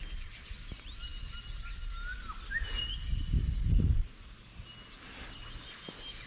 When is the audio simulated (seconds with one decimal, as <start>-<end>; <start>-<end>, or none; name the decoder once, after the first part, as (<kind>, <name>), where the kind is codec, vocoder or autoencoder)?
none